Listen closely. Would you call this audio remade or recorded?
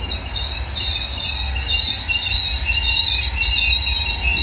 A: recorded